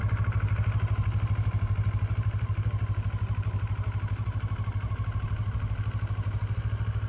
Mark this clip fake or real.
real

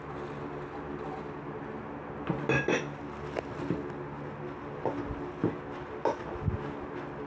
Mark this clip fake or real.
real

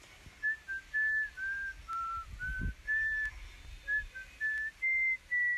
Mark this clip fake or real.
real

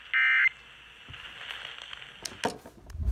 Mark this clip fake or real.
real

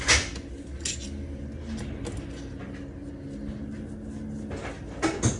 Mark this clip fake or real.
real